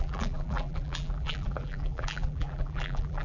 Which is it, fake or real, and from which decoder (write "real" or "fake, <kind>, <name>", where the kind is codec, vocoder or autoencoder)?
fake, vocoder, BigVGAN v2